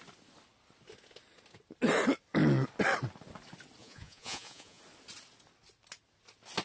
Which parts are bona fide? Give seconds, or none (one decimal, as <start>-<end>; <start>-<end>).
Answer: 0.0-3.8; 4.8-6.6